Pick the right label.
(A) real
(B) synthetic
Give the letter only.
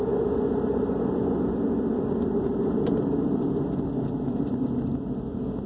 A